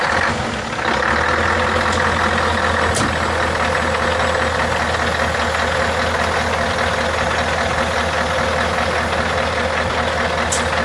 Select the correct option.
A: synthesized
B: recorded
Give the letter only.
B